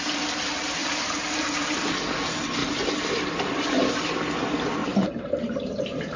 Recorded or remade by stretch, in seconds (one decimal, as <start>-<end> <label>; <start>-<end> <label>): 0.0-0.8 recorded; 0.8-1.9 remade; 1.9-2.6 recorded; 2.6-4.1 remade; 4.1-4.8 recorded; 4.8-6.2 remade